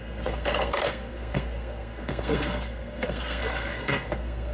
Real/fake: fake